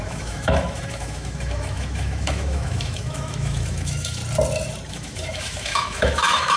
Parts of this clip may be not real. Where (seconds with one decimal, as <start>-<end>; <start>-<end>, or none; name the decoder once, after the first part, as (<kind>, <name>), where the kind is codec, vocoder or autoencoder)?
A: 0.0-4.2 (autoencoder, DAC-VAE); 4.9-6.6